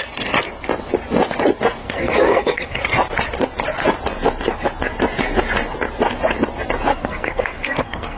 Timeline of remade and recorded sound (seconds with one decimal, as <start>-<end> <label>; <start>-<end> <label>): 0.0-1.8 recorded; 1.8-2.8 remade; 2.8-6.9 recorded; 6.9-8.2 remade